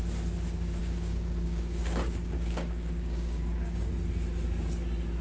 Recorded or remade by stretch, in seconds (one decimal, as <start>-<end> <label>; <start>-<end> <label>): 0.0-0.8 recorded; 0.8-3.9 remade; 3.9-5.2 recorded